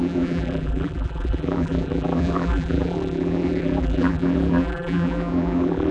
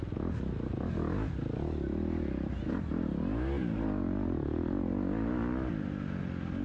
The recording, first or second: second